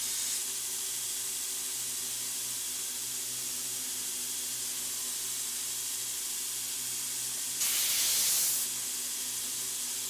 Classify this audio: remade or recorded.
recorded